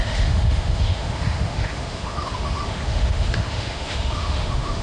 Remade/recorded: remade